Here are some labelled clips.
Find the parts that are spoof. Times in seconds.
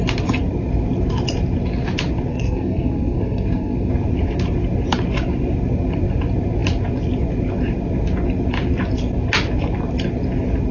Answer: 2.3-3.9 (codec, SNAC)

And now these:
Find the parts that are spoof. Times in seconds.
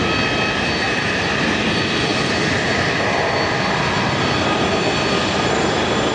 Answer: none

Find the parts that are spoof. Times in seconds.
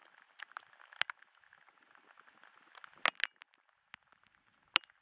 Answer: none